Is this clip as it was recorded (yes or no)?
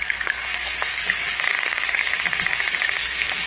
no